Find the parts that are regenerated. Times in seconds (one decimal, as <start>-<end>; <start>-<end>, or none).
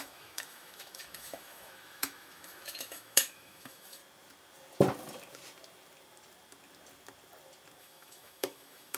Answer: 0.0-4.0; 7.8-9.0